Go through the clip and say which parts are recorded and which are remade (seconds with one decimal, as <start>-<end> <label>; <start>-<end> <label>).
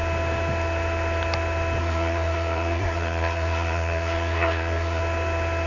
0.0-1.8 recorded; 1.8-5.0 remade; 5.0-5.7 recorded